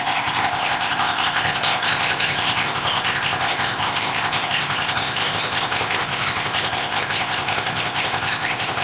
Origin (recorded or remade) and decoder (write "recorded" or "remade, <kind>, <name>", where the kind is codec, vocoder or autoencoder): remade, codec, ZipCodec